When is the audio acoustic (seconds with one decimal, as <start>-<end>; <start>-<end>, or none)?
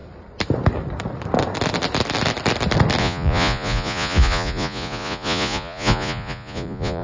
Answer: 0.0-3.0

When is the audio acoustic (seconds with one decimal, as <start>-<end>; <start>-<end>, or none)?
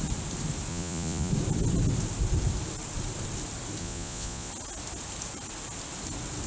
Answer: 0.0-0.7; 1.3-3.8; 4.5-6.5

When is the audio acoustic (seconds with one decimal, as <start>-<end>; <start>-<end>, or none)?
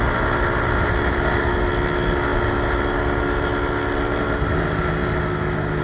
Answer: 0.0-5.8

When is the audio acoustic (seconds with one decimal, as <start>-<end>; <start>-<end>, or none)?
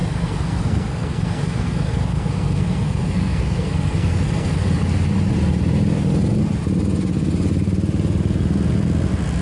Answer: 4.6-9.4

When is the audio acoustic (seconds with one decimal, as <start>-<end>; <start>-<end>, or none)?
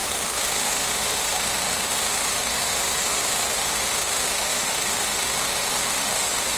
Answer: none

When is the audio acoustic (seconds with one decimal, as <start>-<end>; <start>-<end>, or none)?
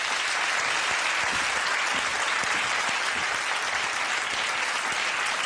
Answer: 0.0-5.5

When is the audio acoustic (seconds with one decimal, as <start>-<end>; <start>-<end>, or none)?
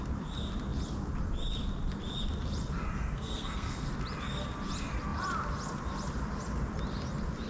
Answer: 0.0-3.0; 3.9-7.5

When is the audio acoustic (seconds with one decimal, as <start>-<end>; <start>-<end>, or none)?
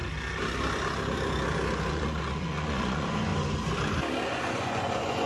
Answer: 0.0-1.9; 3.3-4.3